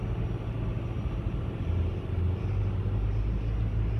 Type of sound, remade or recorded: recorded